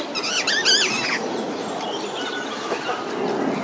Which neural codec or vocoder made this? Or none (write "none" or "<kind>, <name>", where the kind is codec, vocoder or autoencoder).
none